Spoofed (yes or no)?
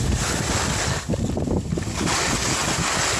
no